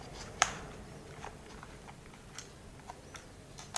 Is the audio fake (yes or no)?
yes